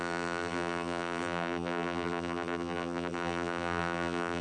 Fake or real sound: fake